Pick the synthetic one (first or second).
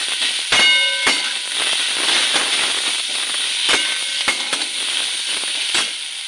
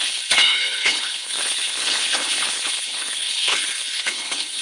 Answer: second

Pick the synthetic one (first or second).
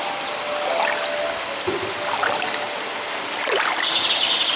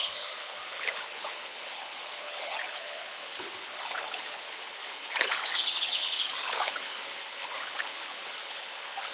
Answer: second